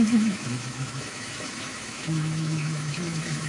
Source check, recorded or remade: remade